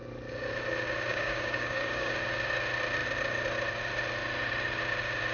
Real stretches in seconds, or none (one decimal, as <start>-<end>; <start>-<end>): 0.0-1.1; 2.1-5.3